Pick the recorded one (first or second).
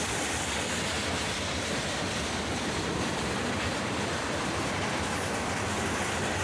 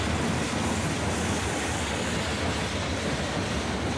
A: second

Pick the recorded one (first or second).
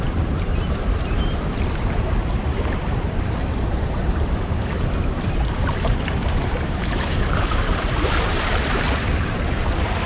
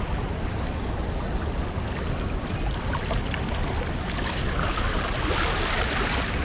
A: second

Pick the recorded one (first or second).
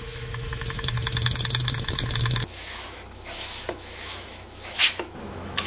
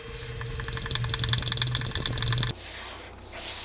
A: second